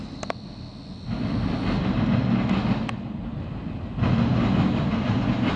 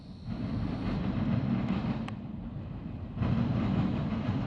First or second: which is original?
first